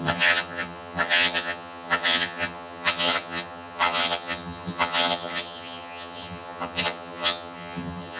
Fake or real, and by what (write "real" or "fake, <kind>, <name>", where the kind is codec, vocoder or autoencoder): fake, vocoder, HiFi-GAN